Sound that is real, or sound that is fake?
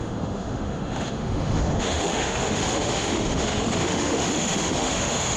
fake